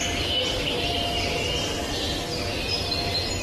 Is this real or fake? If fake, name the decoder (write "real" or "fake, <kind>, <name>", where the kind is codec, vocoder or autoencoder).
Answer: real